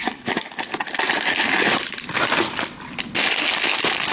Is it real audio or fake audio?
real